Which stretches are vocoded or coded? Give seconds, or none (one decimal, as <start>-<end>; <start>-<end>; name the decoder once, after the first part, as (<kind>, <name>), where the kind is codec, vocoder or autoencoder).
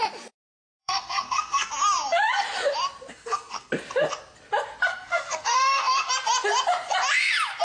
0.8-1.7 (codec, SNAC); 3.1-3.7; 4.9-6.1